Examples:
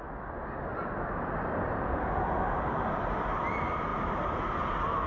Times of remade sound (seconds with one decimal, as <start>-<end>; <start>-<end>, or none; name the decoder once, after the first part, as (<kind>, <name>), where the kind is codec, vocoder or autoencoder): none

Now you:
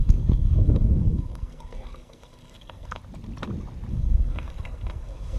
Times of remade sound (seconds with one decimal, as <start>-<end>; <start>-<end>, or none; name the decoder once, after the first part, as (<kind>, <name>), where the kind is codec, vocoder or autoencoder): 0.0-3.0 (codec, SNAC); 3.9-5.4

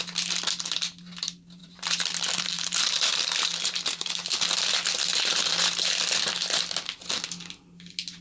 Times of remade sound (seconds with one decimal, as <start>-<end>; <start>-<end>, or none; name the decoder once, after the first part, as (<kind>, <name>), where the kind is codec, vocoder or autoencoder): 1.6-4.1 (vocoder, BigVGAN v2); 5.1-5.9

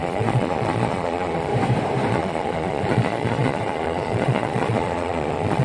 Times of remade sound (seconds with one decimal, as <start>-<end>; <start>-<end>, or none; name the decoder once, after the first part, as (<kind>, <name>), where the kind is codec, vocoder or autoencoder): 0.0-1.5 (vocoder, Vocos); 2.1-5.6

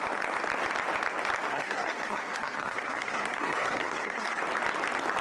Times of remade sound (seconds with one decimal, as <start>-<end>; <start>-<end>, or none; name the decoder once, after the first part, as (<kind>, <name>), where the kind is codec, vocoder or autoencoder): 1.5-4.4 (codec, SNAC)

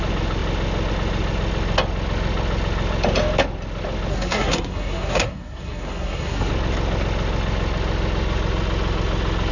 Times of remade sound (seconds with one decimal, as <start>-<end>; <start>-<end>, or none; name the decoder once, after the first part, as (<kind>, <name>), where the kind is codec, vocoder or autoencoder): 4.1-6.5 (codec, SNAC)

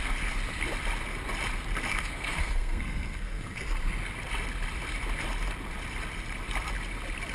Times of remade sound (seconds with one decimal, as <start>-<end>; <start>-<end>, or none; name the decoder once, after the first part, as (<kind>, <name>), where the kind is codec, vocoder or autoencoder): 1.9-3.6 (codec, SNAC)

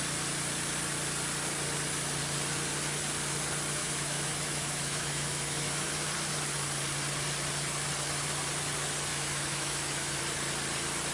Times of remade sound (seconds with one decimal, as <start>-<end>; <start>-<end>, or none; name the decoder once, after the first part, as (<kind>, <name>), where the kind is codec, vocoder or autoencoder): 3.8-6.1 (autoencoder, DAC-VAE); 9.1-10.2